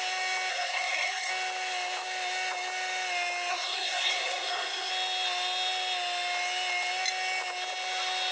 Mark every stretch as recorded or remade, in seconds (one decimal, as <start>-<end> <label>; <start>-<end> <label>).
0.0-0.5 recorded; 0.5-1.3 remade; 1.3-3.5 recorded; 3.5-4.9 remade; 4.9-8.3 recorded